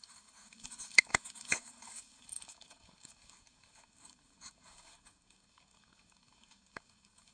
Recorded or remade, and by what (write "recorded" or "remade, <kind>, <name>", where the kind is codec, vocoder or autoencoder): remade, codec, DAC